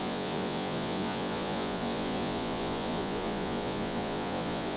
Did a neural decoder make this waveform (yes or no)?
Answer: yes